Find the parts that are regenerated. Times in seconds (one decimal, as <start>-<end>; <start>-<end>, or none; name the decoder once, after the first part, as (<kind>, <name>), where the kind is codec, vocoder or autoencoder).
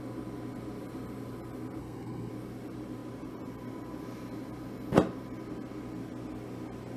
1.8-2.3 (codec, SNAC)